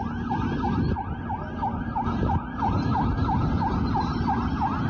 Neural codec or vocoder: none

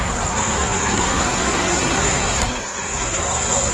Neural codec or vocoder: codec, SNAC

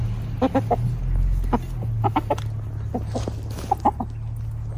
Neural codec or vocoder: none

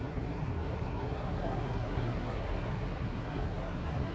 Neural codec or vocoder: codec, SNAC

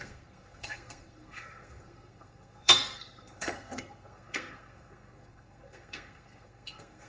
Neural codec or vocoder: codec, SNAC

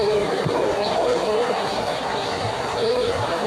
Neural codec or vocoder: codec, SNAC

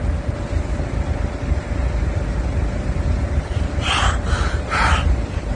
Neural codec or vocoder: none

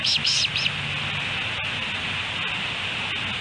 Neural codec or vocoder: none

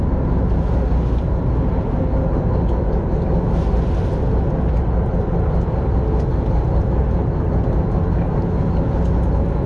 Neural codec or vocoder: none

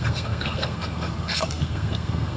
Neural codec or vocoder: codec, SNAC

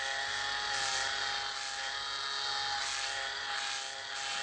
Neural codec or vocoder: none